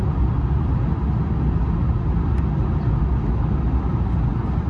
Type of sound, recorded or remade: recorded